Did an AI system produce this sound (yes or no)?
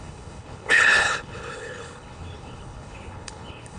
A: yes